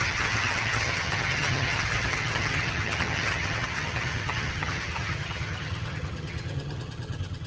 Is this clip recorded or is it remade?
remade